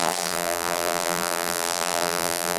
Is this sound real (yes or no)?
no